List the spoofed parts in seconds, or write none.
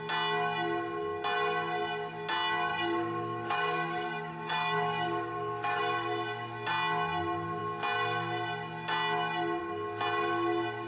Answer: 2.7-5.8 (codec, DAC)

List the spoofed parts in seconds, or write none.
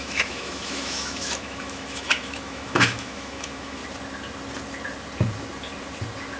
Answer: 0.0-3.8 (autoencoder, DAC-VAE)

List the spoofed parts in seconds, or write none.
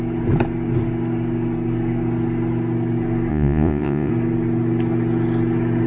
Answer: 3.3-4.1 (vocoder, Vocos)